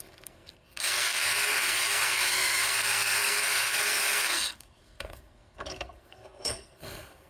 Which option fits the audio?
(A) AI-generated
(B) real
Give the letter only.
A